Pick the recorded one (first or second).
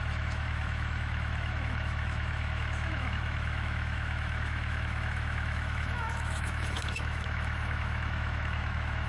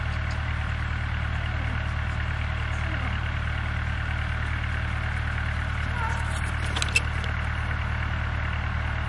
second